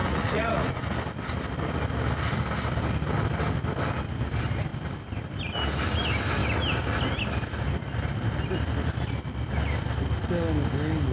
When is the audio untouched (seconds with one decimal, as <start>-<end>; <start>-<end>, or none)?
0.8-11.1